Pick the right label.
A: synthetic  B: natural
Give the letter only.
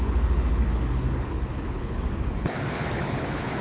A